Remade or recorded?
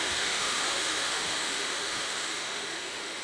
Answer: remade